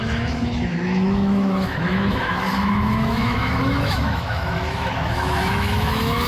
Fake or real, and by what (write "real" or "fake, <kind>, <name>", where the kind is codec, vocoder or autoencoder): fake, autoencoder, DAC-VAE